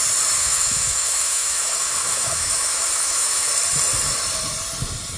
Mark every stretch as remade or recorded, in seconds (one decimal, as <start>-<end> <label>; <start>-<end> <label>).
0.0-0.4 recorded; 0.4-3.5 remade; 3.5-5.2 recorded

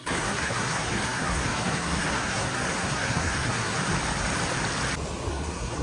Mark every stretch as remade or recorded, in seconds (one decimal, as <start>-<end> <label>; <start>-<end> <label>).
0.0-3.8 remade; 3.8-5.3 recorded; 5.3-5.8 remade

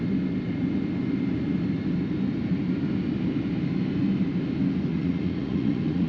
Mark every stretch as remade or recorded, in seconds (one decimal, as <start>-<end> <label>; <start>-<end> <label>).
0.0-4.9 recorded; 4.9-6.1 remade

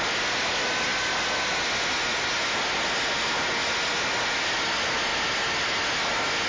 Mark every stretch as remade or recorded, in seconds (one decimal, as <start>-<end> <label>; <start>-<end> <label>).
0.0-6.5 recorded

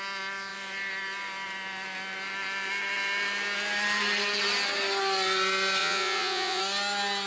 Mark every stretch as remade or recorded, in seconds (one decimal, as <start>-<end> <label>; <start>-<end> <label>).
0.0-5.8 recorded; 5.8-6.6 remade; 6.6-7.3 recorded